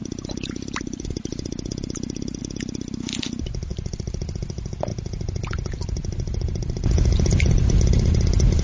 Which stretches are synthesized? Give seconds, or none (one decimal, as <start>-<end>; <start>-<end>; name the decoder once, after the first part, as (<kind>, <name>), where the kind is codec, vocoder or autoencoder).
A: 0.0-2.4 (vocoder, BigVGAN v2); 3.7-4.3; 4.9-8.1